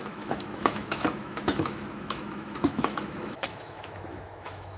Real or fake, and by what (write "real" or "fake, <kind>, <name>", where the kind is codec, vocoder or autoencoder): fake, autoencoder, DAC-VAE